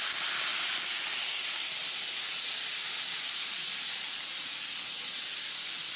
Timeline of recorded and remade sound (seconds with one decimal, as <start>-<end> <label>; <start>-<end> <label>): 0.0-6.0 recorded

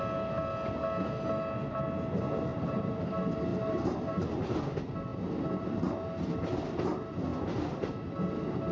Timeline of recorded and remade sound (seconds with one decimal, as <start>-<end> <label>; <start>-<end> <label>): 0.0-2.5 recorded; 2.5-3.1 remade; 3.1-3.5 recorded; 3.5-4.4 remade; 4.4-5.1 recorded; 5.1-5.7 remade; 5.7-8.7 recorded

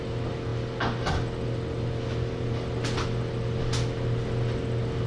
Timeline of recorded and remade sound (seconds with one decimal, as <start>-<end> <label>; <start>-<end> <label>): 0.0-5.1 recorded

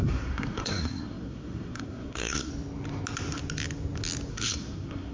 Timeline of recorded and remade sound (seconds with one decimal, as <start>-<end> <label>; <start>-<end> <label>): 0.0-2.5 remade; 2.5-4.3 recorded; 4.3-5.1 remade

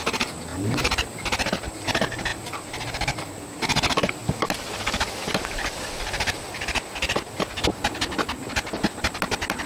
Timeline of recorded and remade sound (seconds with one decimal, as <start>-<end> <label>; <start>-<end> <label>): 0.0-4.2 remade; 4.2-9.7 recorded

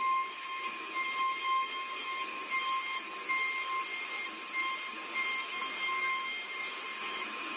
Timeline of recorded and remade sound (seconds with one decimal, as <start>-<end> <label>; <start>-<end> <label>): 0.0-2.4 remade; 2.4-7.0 recorded; 7.0-7.6 remade

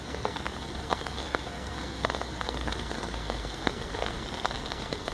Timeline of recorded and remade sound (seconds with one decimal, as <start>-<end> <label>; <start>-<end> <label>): 0.0-5.1 remade